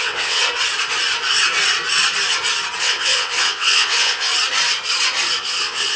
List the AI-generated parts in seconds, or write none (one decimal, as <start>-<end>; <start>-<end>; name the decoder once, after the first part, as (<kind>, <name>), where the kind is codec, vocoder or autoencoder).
0.0-0.4 (vocoder, WaveNeXt); 2.8-4.3; 5.4-6.0